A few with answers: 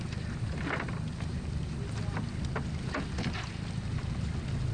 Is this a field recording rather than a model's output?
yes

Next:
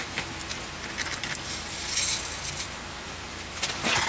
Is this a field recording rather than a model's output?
no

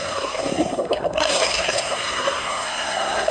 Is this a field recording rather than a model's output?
no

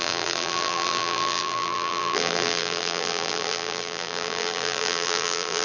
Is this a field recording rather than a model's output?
no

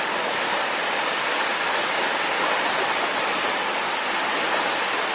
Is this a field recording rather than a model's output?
yes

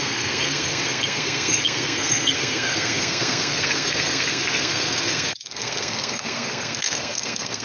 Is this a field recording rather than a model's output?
no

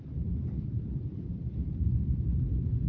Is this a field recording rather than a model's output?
yes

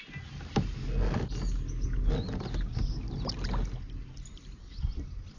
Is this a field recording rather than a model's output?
yes